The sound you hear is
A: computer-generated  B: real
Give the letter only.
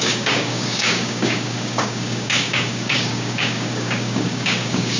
A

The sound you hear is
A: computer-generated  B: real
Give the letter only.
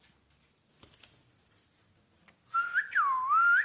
B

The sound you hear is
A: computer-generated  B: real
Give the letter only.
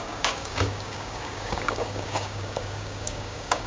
A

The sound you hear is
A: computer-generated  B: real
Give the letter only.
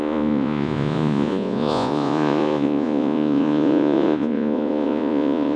A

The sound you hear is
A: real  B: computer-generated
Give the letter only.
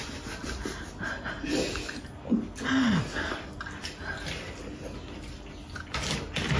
A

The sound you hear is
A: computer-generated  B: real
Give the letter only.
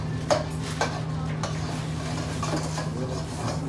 B